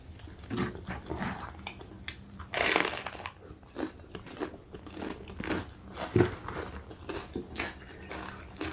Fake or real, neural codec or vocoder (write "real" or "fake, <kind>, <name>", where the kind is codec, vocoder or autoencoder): real